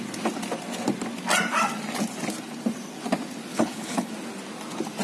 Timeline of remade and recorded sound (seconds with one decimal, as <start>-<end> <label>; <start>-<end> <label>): 0.0-3.5 recorded; 3.5-4.1 remade; 4.1-5.0 recorded